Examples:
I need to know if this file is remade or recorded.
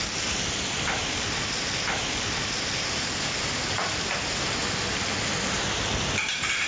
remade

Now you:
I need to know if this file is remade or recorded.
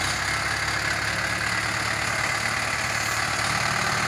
recorded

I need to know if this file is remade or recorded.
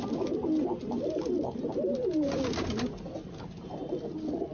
recorded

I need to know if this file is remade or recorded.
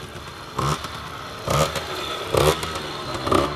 remade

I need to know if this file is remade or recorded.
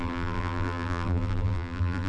remade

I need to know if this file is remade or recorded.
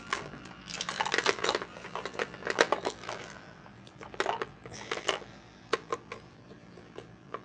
remade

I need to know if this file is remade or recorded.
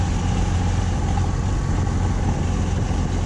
recorded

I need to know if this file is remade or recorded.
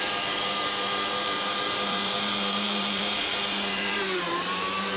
remade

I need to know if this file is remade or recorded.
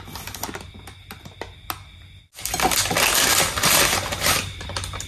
recorded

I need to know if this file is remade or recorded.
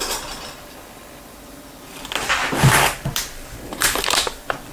remade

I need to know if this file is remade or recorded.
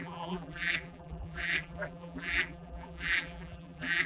remade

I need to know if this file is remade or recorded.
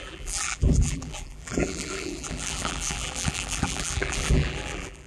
remade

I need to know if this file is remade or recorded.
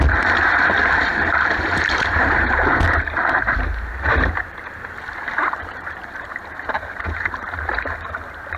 remade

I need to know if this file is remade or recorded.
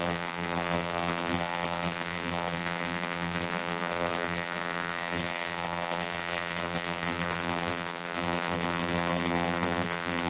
remade